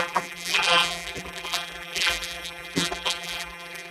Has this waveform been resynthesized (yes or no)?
yes